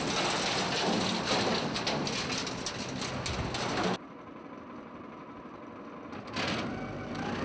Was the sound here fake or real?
real